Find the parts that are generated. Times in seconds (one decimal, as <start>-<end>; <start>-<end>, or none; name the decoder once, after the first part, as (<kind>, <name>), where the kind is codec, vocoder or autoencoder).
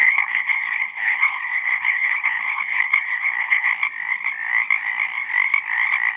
0.0-3.7 (codec, HILCodec)